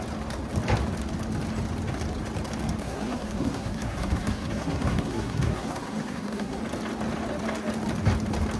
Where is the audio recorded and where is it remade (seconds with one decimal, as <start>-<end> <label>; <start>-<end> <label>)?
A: 0.0-2.8 recorded; 2.8-6.6 remade; 6.6-8.6 recorded